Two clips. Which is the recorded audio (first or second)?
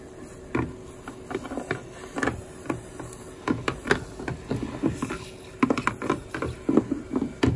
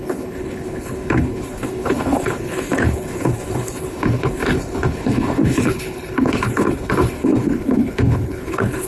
first